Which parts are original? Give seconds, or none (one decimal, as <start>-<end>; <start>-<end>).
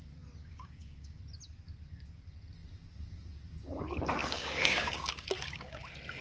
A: 0.0-0.4; 1.2-4.2; 5.8-6.2